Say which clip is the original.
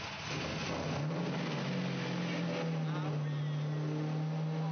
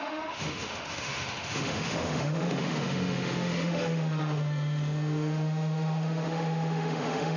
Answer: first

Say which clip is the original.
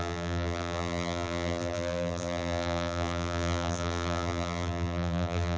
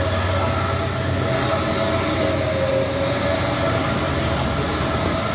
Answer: second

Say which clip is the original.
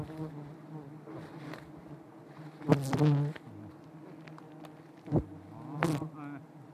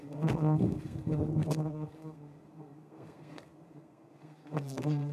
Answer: first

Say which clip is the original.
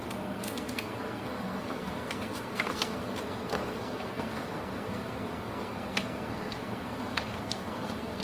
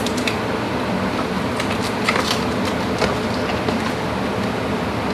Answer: second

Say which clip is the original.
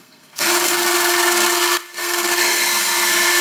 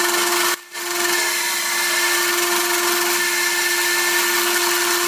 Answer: second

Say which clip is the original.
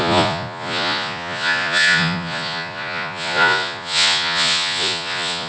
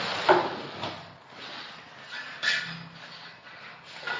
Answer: second